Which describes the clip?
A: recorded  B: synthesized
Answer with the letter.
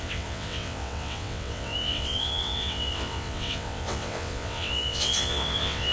B